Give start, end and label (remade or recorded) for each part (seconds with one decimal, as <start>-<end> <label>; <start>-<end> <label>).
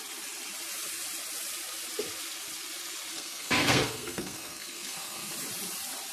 0.0-3.1 recorded; 3.1-5.3 remade; 5.3-6.1 recorded